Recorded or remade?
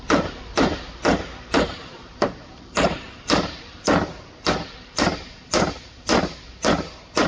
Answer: remade